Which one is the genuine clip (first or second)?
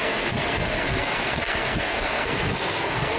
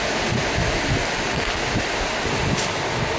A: second